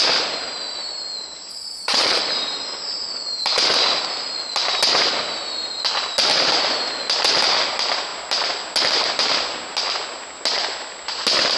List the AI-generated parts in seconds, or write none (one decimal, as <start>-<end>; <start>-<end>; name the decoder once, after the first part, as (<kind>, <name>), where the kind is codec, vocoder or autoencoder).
1.5-2.2 (vocoder, Vocos)